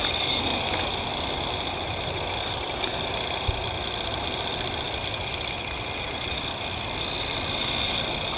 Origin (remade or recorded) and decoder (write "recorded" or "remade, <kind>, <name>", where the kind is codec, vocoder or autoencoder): recorded